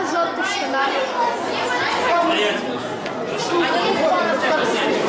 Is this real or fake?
real